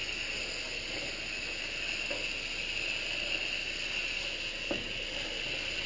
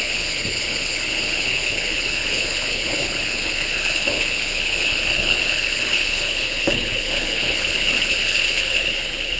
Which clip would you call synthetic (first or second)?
second